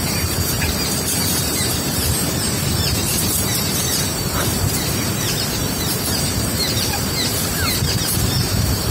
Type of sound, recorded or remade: remade